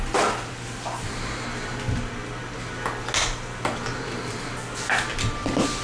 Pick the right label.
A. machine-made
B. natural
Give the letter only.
B